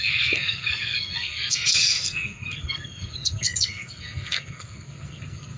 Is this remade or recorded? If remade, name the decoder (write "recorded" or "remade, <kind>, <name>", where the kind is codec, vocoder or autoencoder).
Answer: remade, codec, SNAC